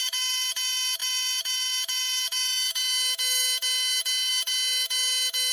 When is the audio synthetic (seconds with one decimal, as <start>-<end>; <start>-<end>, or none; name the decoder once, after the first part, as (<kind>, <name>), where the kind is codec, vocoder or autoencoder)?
0.0-5.5 (autoencoder, DAC-VAE)